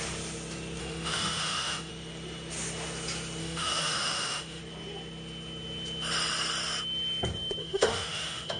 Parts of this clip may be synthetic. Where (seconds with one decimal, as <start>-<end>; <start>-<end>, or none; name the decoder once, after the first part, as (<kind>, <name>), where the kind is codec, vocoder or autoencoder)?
0.8-1.9 (autoencoder, DAC-VAE); 3.4-4.6; 7.6-8.6